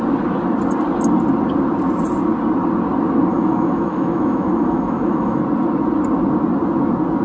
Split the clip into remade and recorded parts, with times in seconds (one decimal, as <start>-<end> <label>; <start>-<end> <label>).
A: 0.0-3.3 recorded; 3.3-5.4 remade; 5.4-7.2 recorded